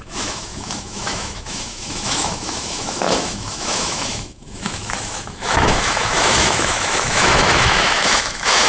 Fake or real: fake